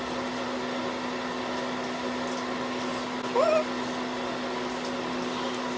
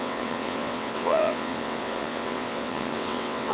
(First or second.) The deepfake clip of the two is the second